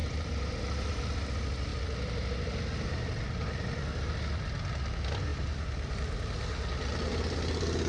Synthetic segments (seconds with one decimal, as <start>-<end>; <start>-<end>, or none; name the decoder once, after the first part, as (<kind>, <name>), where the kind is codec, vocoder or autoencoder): 0.0-1.0 (vocoder, BigVGAN v2); 5.3-5.9